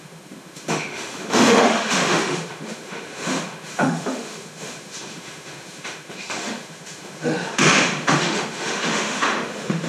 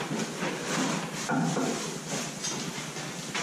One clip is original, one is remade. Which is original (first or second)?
second